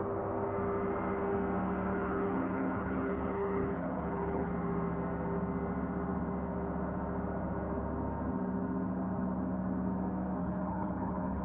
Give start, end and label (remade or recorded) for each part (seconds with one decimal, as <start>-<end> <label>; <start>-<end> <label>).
0.0-1.9 recorded; 1.9-4.5 remade; 4.5-10.4 recorded; 10.4-11.4 remade